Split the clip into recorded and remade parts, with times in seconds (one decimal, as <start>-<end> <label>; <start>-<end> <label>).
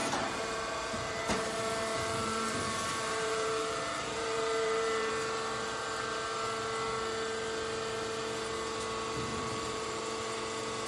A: 0.0-5.1 remade; 5.1-9.3 recorded; 9.3-10.0 remade; 10.0-10.9 recorded